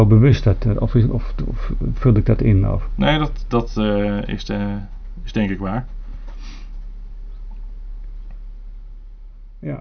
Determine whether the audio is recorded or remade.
recorded